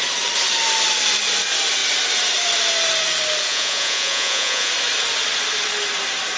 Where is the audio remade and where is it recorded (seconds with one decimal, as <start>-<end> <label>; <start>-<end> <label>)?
0.0-3.5 recorded; 3.5-4.7 remade; 4.7-6.4 recorded